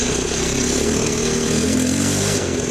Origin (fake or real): fake